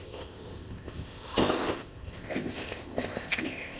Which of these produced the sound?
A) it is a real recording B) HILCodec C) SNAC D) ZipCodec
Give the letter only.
D